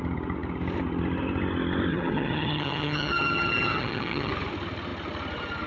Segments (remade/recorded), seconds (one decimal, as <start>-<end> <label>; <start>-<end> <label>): 0.0-1.9 recorded; 1.9-4.3 remade; 4.3-5.7 recorded